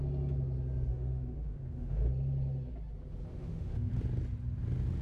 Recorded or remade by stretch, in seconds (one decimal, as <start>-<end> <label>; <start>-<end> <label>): 0.0-0.9 recorded; 0.9-2.1 remade; 2.1-3.3 recorded; 3.3-3.9 remade; 3.9-5.0 recorded

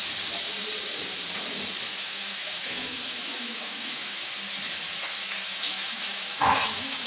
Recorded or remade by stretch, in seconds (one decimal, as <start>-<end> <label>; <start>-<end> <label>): 0.0-1.9 recorded; 1.9-4.3 remade; 4.3-5.2 recorded; 5.2-7.1 remade